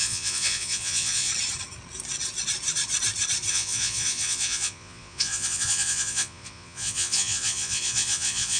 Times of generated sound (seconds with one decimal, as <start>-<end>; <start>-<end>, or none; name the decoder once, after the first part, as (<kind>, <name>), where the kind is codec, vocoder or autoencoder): 0.0-1.3 (vocoder, Vocos); 3.5-8.6